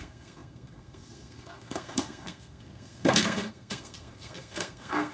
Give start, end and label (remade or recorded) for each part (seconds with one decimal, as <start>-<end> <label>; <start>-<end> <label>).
0.0-5.1 remade